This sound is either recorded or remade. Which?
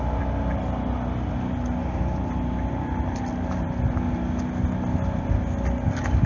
recorded